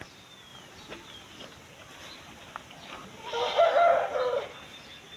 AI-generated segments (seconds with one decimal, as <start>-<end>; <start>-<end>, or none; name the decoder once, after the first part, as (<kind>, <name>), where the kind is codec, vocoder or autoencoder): none